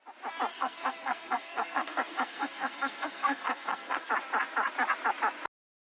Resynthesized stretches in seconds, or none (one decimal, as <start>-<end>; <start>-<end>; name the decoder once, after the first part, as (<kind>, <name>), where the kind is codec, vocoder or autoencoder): 0.5-4.1 (codec, SNAC)